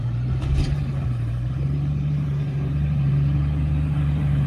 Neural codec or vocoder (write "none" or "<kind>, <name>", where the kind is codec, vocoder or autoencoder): vocoder, BigVGAN v2